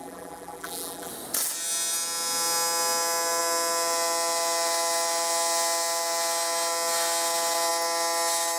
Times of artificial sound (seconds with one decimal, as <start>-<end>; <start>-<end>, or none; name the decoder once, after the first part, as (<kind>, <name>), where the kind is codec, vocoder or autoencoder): 0.0-1.1 (vocoder, BigVGAN v2)